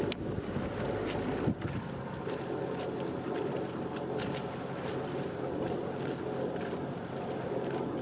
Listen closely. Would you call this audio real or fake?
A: real